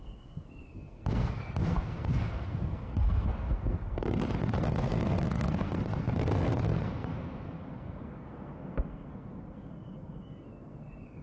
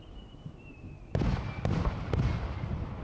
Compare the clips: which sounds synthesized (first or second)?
first